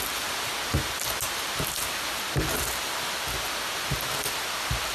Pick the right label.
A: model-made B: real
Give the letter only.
B